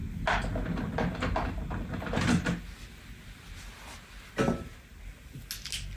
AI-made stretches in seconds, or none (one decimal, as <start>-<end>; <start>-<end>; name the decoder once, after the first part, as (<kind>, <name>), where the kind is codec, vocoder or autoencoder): none